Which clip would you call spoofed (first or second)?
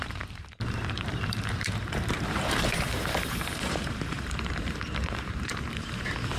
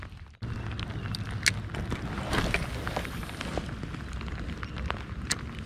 first